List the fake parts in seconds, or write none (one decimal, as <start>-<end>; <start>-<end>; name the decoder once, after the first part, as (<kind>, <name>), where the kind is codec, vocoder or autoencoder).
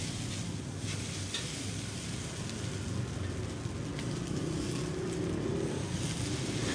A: none